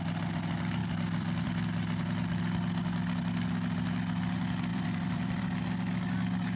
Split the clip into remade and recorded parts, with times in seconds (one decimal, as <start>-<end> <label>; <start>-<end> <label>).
0.0-0.8 recorded; 0.8-1.5 remade; 1.5-4.7 recorded; 4.7-5.4 remade; 5.4-6.6 recorded